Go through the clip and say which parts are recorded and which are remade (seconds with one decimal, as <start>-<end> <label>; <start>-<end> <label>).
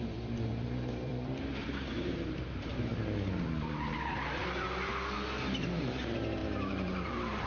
0.0-2.9 remade; 2.9-3.6 recorded; 3.6-4.4 remade; 4.4-5.6 recorded; 5.6-7.5 remade